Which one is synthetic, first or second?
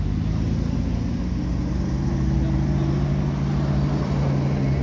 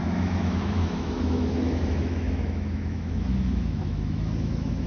second